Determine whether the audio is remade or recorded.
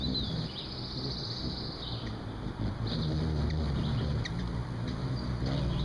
recorded